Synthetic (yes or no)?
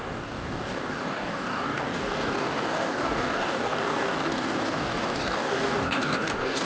yes